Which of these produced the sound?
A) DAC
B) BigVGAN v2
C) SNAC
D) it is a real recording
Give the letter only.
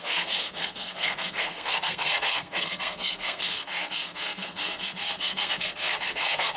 C